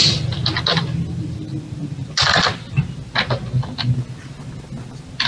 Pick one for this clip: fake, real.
real